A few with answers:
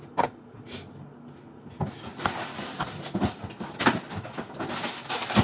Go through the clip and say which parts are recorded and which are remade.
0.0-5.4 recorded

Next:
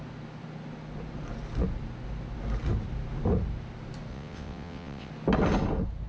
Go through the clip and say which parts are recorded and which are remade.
0.0-4.1 recorded; 4.1-5.1 remade; 5.1-6.1 recorded

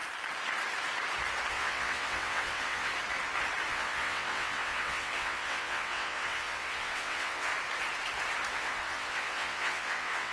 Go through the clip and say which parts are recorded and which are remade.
0.0-1.5 recorded; 1.5-2.9 remade; 2.9-3.7 recorded; 3.7-7.5 remade; 7.5-8.5 recorded; 8.5-10.3 remade

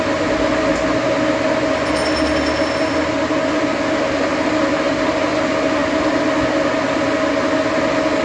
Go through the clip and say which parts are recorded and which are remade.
0.0-8.2 recorded

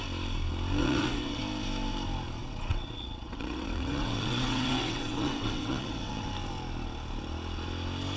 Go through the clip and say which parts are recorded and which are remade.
0.0-0.8 recorded; 0.8-1.4 remade; 1.4-2.4 recorded; 2.4-6.3 remade; 6.3-8.2 recorded

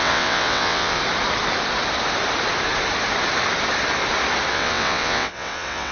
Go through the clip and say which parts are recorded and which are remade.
0.0-1.0 remade; 1.0-4.5 recorded; 4.5-5.9 remade

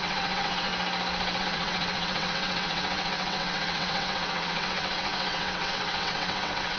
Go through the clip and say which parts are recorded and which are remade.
0.0-0.7 remade; 0.7-1.4 recorded; 1.4-6.8 remade

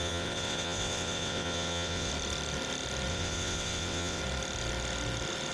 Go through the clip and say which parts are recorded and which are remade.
0.0-2.1 remade; 2.1-3.1 recorded; 3.1-4.2 remade; 4.2-5.5 recorded